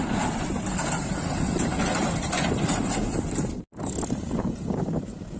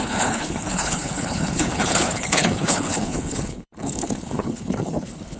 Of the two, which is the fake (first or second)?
second